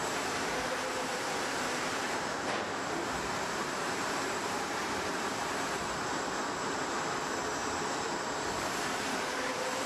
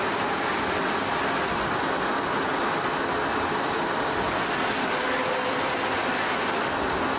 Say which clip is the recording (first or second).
second